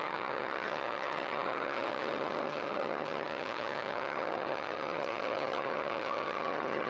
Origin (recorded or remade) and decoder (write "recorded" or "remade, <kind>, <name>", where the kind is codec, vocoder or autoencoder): remade, vocoder, HiFi-GAN